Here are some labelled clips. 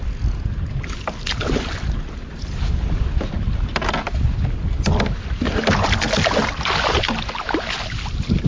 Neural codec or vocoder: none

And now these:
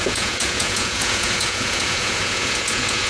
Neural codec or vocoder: vocoder, Vocos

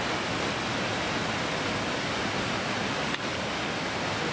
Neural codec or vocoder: none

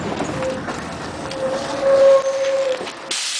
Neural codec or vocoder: none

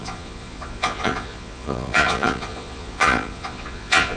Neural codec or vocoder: vocoder, Vocos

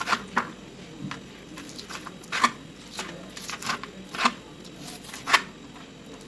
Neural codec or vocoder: none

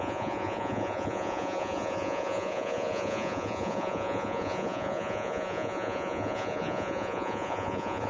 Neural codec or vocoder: vocoder, Vocos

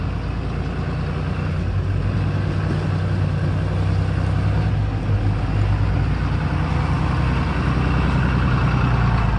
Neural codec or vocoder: none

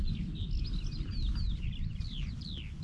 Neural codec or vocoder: none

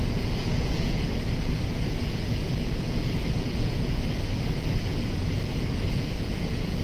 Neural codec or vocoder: vocoder, Vocos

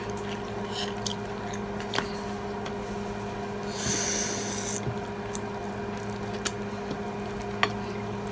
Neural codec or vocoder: none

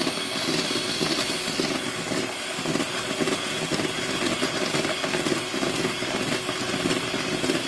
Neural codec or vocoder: none